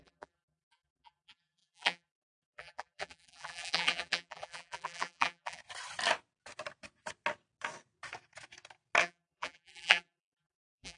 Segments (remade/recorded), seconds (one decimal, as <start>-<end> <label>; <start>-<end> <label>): 0.0-5.6 remade; 5.6-9.0 recorded; 9.0-11.0 remade